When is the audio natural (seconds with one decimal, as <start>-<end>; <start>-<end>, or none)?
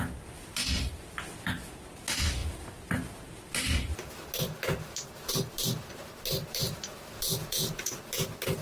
0.0-7.4; 8.0-8.6